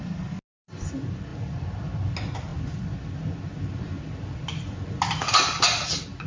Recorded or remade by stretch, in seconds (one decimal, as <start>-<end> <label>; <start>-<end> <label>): 0.0-6.3 recorded